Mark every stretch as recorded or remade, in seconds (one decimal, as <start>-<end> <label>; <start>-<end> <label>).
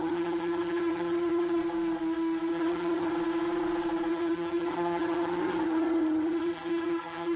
0.0-1.6 remade; 1.6-2.5 recorded; 2.5-3.1 remade; 3.1-4.1 recorded; 4.1-7.4 remade